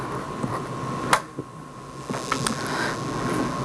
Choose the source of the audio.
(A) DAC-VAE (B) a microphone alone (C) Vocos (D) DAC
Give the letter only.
B